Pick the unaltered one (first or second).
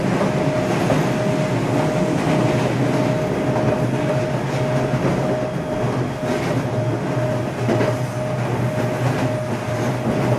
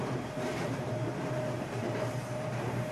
first